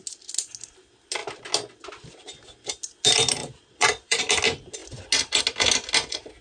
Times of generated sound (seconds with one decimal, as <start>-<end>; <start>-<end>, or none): 3.4-4.2